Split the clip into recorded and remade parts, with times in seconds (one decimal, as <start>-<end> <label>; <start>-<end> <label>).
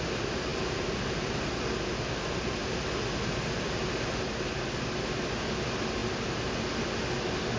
0.0-7.6 recorded